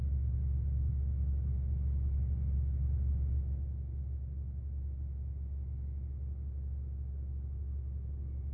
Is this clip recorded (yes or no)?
yes